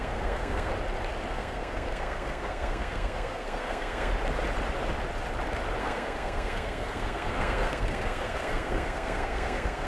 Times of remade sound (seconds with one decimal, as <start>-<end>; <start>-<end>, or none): 0.0-0.7; 1.3-4.1; 5.8-9.9